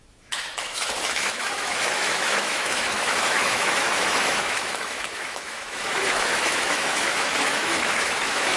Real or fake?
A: fake